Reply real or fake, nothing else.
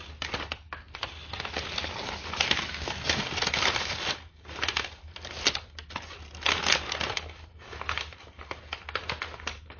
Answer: real